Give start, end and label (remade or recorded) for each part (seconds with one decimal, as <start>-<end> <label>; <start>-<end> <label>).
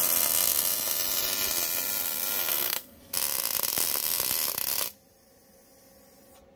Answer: 0.0-2.5 recorded; 2.5-3.0 remade; 3.0-6.6 recorded